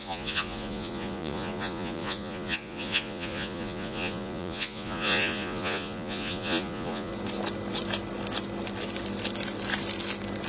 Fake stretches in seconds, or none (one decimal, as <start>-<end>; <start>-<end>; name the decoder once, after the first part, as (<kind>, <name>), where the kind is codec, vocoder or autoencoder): 0.0-7.1 (vocoder, Vocos)